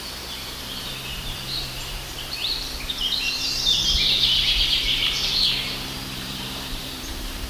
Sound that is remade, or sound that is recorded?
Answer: remade